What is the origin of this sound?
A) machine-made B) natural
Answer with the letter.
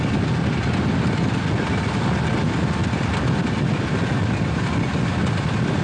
B